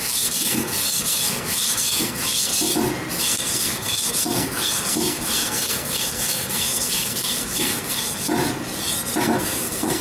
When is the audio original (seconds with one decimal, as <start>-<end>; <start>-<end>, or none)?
2.5-3.2; 8.3-9.2